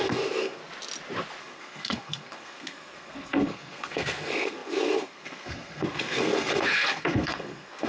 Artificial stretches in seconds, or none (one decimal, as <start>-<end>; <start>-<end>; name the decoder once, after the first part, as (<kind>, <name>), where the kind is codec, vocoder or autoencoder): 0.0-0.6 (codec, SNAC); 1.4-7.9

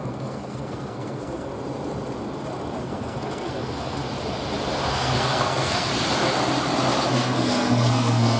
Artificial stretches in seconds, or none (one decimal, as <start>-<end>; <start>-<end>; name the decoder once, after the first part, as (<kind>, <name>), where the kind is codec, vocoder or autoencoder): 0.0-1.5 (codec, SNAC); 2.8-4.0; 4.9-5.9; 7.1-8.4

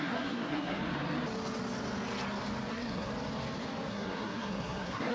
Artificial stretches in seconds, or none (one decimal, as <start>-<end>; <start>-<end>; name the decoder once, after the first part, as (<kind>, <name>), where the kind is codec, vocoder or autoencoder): 0.0-0.8 (codec, SNAC); 2.7-3.1; 3.9-5.1

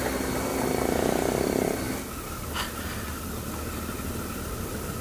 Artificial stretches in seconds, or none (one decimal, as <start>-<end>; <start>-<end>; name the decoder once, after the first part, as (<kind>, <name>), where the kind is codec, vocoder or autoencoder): none

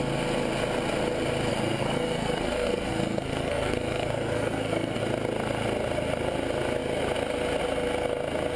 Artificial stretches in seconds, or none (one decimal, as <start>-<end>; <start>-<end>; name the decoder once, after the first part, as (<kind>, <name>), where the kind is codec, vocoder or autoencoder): 1.5-5.0 (codec, SNAC)

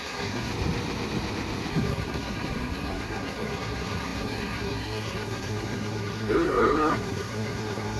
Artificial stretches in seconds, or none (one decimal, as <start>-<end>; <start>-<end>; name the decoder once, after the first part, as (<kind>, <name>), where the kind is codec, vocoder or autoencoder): 0.0-0.5 (codec, SNAC); 1.7-8.0

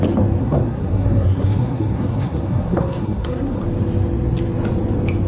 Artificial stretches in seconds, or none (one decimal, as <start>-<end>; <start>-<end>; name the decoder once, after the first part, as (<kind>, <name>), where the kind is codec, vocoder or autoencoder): 0.4-3.6 (codec, SNAC)

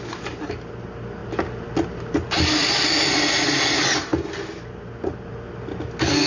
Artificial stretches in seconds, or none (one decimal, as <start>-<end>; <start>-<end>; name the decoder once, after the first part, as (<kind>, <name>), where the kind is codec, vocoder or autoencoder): none